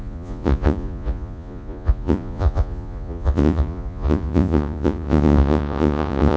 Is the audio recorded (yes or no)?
no